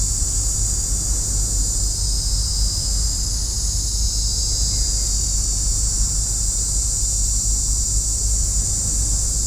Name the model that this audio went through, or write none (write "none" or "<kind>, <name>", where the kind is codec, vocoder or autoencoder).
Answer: none